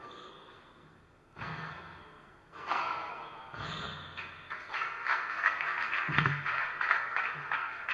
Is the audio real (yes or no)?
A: no